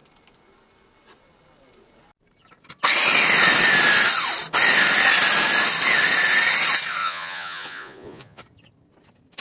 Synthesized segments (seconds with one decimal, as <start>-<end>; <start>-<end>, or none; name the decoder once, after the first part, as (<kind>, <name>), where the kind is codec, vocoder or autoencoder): 7.0-8.4 (vocoder, Vocos)